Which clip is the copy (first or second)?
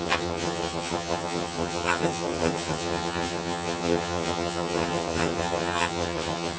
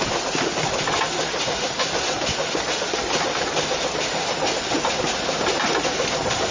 first